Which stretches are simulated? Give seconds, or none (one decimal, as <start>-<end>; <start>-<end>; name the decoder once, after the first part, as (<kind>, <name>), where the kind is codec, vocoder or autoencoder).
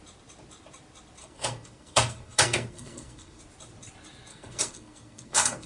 1.2-3.4 (codec, SNAC); 4.3-5.7